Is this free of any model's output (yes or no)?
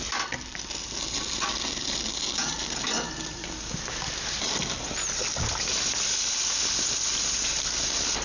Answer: yes